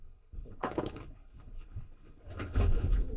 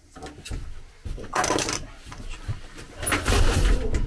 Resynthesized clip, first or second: first